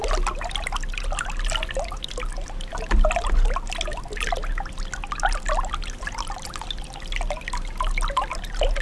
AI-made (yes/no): no